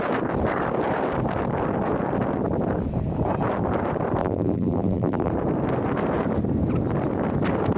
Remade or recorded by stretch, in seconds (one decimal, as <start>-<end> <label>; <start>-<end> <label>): 0.0-4.2 recorded; 4.2-5.3 remade; 5.3-7.8 recorded